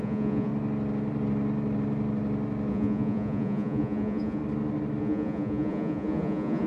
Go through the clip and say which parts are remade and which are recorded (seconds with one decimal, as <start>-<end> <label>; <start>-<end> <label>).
0.0-0.5 remade; 0.5-2.7 recorded; 2.7-4.4 remade; 4.4-5.0 recorded; 5.0-6.7 remade